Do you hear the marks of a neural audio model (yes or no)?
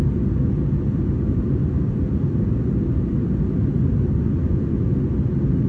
no